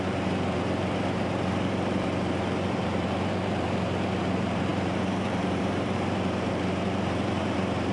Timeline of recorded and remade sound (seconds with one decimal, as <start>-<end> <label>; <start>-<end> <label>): 0.0-7.9 remade